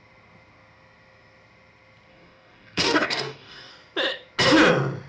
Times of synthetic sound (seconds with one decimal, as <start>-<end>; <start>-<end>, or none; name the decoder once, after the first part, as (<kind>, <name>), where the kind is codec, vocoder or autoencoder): 2.1-3.7 (codec, DAC)